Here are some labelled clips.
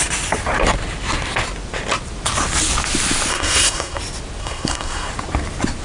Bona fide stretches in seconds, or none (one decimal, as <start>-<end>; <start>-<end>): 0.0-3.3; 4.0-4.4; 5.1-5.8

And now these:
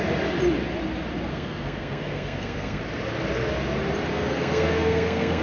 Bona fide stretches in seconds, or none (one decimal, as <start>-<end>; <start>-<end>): 0.0-1.3; 2.8-4.1

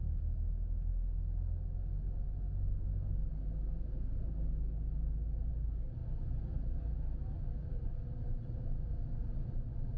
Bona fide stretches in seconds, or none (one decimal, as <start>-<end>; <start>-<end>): 0.0-10.0